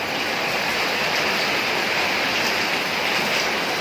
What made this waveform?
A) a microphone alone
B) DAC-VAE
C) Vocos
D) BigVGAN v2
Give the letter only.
A